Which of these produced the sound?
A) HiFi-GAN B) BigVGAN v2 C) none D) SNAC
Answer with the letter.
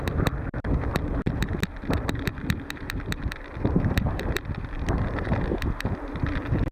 C